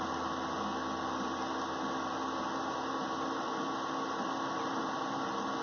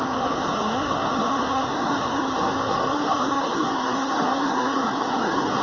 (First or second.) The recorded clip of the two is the first